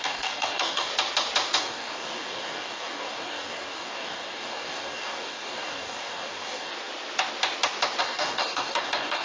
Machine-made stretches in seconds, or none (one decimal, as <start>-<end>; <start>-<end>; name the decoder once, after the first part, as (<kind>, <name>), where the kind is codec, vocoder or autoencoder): 0.0-0.9 (codec, DAC); 1.6-6.7; 8.0-9.2